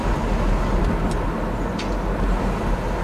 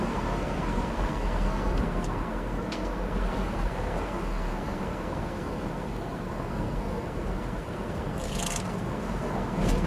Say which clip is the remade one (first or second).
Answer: second